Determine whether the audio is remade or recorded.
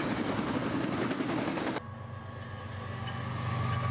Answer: recorded